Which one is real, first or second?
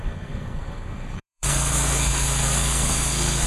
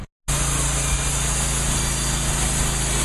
second